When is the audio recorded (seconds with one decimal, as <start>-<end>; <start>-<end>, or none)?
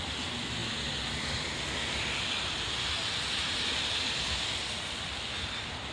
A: 0.0-5.9